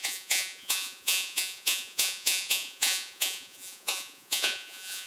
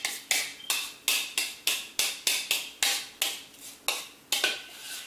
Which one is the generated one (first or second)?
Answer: first